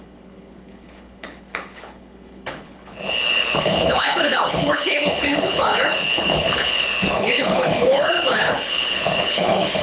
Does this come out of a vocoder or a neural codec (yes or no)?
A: yes